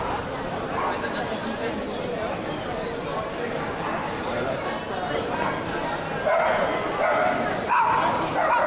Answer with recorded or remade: recorded